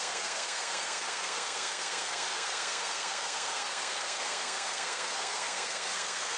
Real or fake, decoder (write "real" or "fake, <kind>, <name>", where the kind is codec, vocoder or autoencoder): fake, codec, SNAC